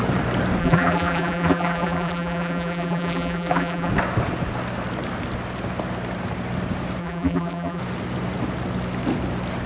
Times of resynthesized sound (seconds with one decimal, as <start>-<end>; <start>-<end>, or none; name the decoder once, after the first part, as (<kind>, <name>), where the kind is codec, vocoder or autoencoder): 0.6-3.9 (vocoder, BigVGAN v2); 7.0-7.8